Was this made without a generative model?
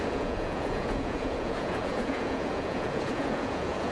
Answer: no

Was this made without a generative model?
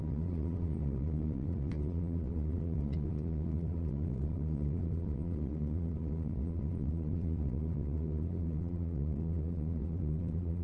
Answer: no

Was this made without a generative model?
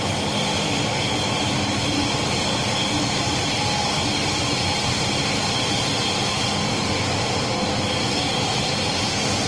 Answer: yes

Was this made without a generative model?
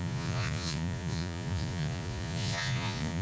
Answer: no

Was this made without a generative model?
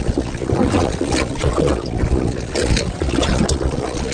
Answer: no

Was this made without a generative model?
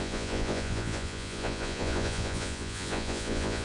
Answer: no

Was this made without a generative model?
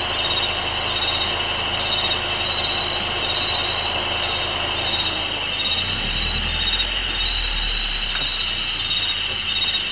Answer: yes